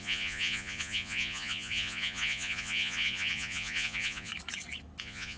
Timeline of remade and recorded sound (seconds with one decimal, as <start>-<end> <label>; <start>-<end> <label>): 0.0-4.3 remade; 4.3-5.0 recorded; 5.0-5.4 remade